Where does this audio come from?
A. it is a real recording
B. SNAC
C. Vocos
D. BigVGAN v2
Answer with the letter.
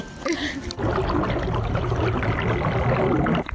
A